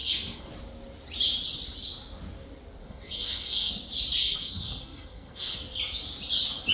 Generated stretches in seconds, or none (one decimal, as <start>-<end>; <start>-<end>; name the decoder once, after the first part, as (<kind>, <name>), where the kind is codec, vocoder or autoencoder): 0.0-0.5 (codec, SNAC); 2.8-3.7; 4.2-5.6